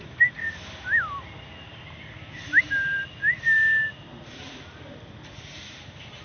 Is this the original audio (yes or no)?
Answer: yes